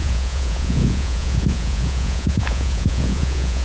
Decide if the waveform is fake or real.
fake